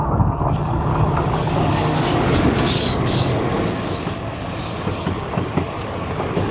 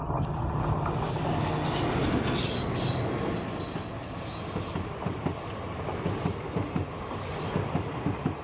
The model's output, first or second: first